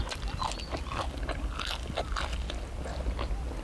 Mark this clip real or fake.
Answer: real